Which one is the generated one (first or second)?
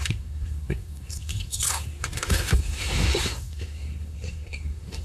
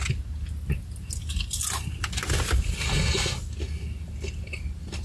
first